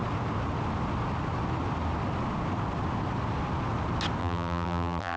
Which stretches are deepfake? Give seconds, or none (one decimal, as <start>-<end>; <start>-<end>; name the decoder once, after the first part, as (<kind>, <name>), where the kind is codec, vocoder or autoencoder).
4.2-5.2 (vocoder, BigVGAN v2)